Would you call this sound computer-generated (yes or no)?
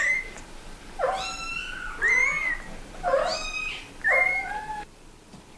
no